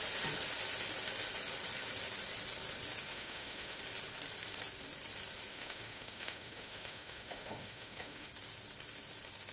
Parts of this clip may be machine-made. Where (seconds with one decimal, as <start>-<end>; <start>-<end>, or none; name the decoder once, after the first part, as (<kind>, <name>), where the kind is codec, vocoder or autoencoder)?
3.1-3.8 (autoencoder, DAC-VAE); 5.5-8.3